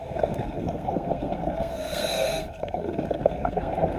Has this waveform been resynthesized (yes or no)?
yes